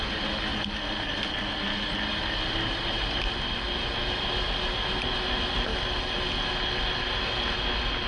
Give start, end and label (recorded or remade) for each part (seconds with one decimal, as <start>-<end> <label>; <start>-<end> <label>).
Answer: 0.0-8.1 recorded